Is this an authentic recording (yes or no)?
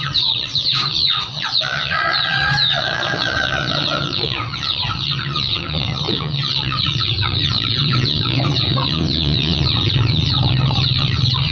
no